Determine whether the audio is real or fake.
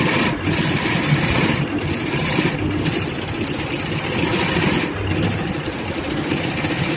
real